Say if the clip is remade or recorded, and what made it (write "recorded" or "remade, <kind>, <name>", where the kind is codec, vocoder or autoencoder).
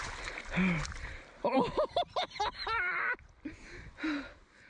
remade, vocoder, BigVGAN v2